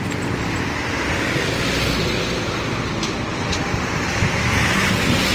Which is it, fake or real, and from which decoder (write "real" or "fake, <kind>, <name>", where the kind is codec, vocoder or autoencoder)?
real